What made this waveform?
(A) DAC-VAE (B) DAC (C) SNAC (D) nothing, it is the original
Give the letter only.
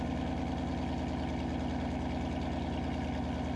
D